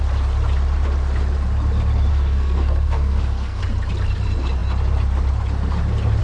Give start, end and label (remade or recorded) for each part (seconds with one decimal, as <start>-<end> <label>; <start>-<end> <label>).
0.0-2.1 recorded; 2.1-3.6 remade; 3.6-6.2 recorded